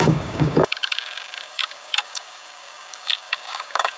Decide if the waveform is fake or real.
fake